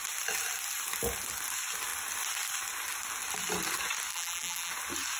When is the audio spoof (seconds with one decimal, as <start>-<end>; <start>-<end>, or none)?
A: 4.1-4.7